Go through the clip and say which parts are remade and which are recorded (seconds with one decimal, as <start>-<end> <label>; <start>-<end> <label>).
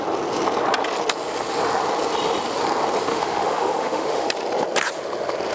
0.0-3.1 recorded; 3.1-4.3 remade; 4.3-5.5 recorded